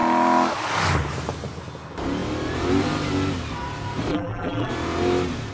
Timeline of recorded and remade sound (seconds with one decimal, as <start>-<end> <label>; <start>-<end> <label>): 0.0-4.1 recorded; 4.1-4.7 remade; 4.7-5.5 recorded